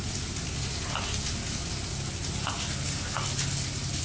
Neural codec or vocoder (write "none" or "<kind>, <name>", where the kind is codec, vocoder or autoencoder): none